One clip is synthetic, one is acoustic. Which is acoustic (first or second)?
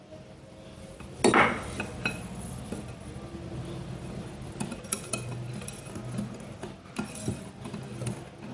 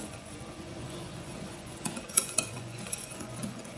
first